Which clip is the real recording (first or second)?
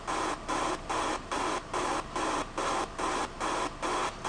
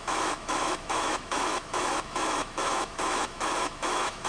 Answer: first